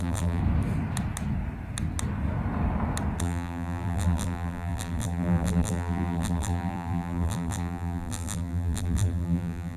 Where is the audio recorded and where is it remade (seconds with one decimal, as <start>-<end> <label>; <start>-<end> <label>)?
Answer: 0.0-0.4 remade; 0.4-3.2 recorded; 3.2-9.8 remade